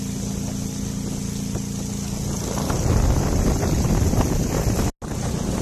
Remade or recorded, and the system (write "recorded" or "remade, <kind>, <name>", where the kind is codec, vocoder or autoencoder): recorded